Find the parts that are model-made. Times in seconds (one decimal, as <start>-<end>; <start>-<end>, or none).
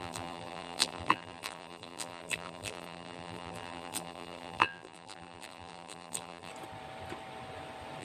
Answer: 0.0-6.5